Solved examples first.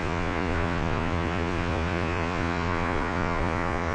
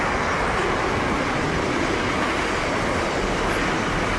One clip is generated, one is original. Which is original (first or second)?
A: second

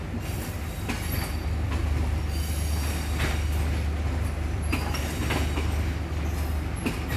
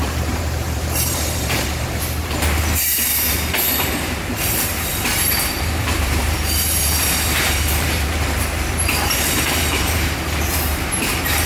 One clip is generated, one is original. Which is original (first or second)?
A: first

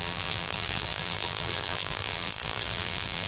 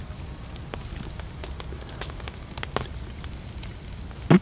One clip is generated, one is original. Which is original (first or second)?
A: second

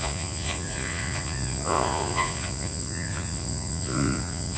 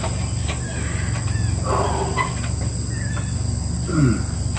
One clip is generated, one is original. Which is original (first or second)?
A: second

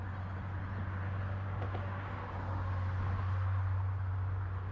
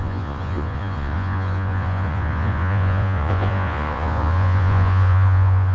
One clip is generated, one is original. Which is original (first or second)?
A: first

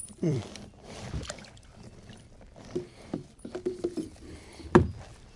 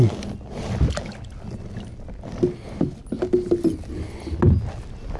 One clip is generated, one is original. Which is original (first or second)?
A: second